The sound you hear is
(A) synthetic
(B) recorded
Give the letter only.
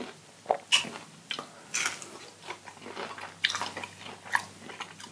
B